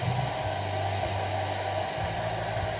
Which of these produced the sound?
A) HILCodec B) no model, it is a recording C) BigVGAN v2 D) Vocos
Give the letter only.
B